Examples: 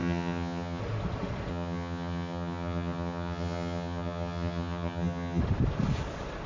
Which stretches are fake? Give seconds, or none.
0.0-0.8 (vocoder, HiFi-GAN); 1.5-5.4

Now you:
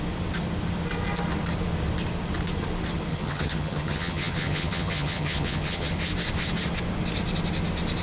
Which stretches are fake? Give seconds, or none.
3.1-5.9 (vocoder, HiFi-GAN)

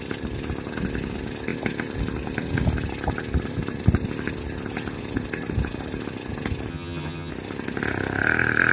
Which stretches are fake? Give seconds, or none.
6.7-7.3 (vocoder, HiFi-GAN)

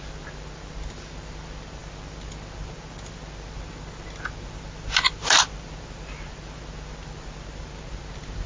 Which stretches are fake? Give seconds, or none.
none

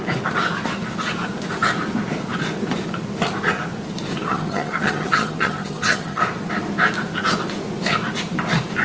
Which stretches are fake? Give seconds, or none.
4.3-6.2 (vocoder, HiFi-GAN)

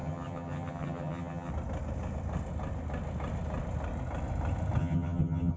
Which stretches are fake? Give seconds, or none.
0.0-1.5 (vocoder, HiFi-GAN); 4.8-5.6